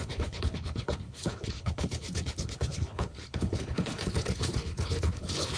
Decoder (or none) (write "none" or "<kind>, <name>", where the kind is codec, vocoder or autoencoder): codec, HILCodec